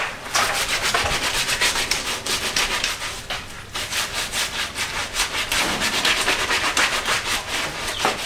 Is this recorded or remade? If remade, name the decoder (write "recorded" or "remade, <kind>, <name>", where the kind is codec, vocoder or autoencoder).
remade, vocoder, BigVGAN v2